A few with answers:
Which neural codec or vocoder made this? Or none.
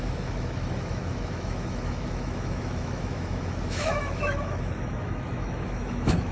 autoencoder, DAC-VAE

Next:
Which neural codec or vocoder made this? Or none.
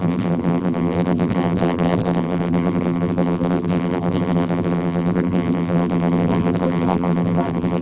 vocoder, BigVGAN v2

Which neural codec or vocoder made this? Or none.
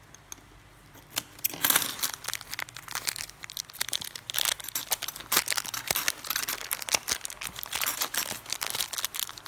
none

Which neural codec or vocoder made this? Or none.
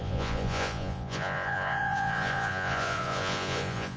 vocoder, Vocos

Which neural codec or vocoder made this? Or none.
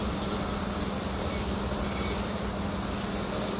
vocoder, BigVGAN v2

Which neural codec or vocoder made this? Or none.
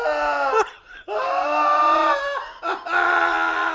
none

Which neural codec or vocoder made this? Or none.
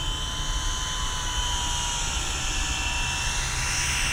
none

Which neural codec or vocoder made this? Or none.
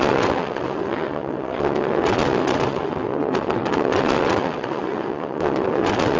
vocoder, WaveNeXt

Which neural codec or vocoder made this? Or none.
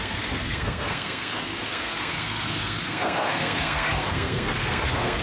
codec, SNAC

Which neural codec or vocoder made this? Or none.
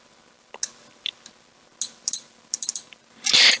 none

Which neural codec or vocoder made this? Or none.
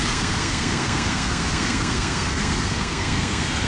codec, SNAC